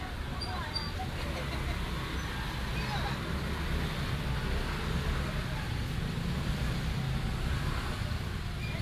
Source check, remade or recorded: recorded